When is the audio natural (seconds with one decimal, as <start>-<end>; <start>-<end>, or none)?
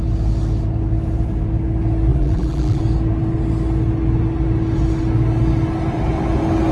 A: 0.0-2.1; 2.8-6.7